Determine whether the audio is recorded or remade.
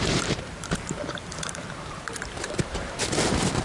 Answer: remade